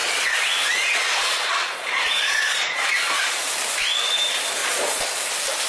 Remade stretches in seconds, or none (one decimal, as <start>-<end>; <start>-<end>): 0.0-3.4; 4.6-5.1